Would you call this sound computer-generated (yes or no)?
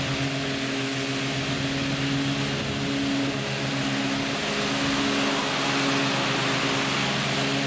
no